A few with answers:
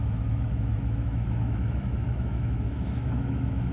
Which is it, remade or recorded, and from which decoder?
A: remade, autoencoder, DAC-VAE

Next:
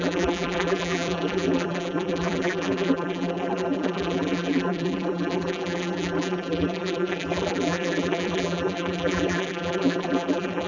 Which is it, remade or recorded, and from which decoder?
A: remade, vocoder, BigVGAN v2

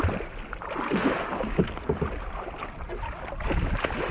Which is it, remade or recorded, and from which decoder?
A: recorded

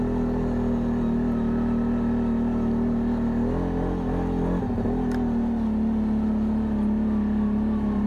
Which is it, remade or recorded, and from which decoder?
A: recorded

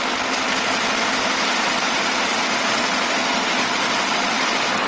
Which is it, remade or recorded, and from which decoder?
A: recorded